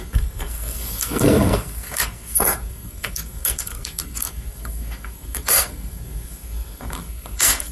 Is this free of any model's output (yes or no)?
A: no